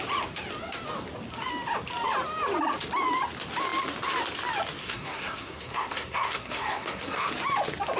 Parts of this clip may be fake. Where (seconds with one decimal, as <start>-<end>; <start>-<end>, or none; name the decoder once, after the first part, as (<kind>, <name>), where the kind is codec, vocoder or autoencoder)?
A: 4.8-7.3 (codec, SNAC)